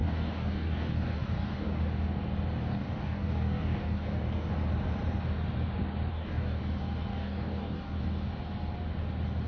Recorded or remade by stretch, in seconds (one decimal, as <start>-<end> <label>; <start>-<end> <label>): 0.0-1.8 remade; 1.8-2.7 recorded; 2.7-4.5 remade; 4.5-6.1 recorded; 6.1-6.6 remade; 6.6-7.1 recorded; 7.1-8.0 remade; 8.0-9.5 recorded